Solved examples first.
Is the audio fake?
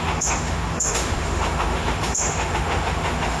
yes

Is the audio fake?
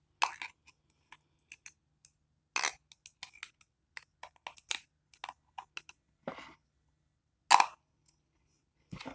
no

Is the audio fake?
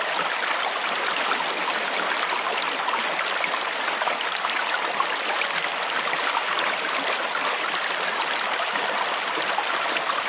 no